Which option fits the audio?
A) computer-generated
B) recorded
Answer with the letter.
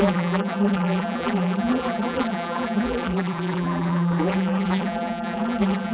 A